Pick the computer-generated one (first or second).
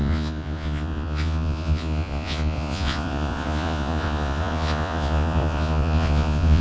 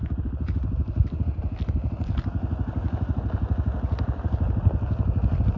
first